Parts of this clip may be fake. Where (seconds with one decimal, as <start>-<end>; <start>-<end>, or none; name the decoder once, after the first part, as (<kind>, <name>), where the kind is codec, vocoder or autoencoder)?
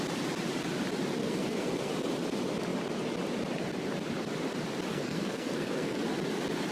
1.2-1.9 (codec, SNAC); 4.9-6.0